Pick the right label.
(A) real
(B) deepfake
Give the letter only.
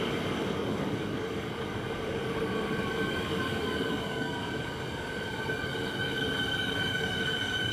B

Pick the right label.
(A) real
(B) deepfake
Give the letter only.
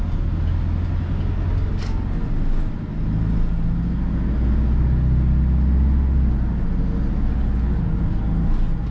A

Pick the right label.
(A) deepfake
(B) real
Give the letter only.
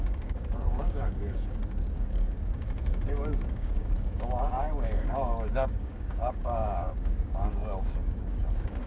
A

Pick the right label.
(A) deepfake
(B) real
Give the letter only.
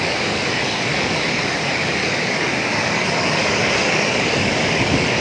A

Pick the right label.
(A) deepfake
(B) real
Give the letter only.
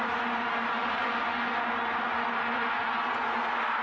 B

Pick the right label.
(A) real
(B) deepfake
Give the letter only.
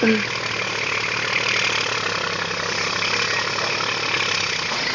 A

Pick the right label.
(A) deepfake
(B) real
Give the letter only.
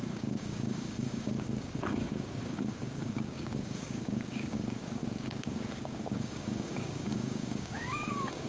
A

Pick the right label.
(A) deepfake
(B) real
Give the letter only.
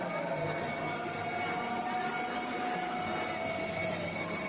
B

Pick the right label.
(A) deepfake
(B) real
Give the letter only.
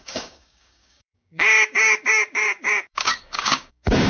A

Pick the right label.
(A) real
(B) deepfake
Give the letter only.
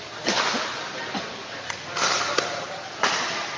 A